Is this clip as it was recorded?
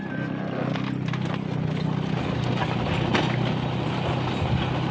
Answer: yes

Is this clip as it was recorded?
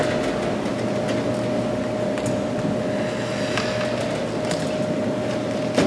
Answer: yes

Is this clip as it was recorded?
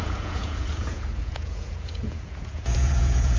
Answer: no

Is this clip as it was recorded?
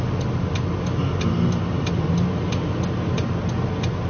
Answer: yes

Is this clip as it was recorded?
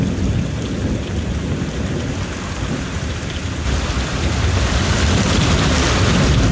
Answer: yes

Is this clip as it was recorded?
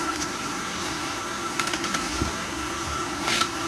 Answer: no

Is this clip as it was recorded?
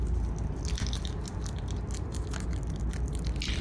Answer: yes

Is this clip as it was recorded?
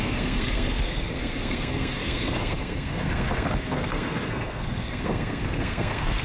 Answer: no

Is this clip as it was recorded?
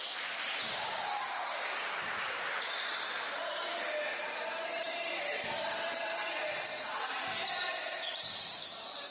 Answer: no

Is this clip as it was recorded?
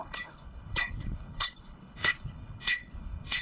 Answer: no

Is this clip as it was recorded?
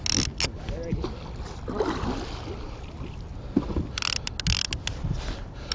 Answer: yes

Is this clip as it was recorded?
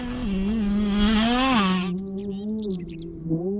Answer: yes